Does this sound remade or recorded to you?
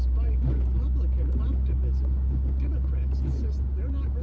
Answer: recorded